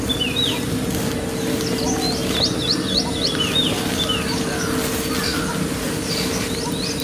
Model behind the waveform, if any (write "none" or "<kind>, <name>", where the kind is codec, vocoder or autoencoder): none